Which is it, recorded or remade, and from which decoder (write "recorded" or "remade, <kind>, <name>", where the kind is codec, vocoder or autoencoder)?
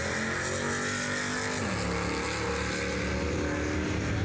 recorded